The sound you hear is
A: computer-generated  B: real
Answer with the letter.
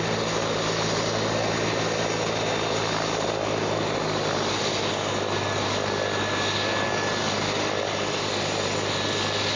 B